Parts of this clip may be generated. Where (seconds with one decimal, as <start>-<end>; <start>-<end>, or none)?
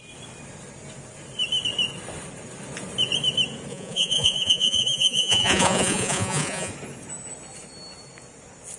3.7-6.7